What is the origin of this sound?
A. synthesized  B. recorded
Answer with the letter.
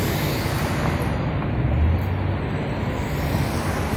B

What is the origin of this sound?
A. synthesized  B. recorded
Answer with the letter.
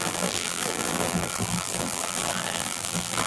A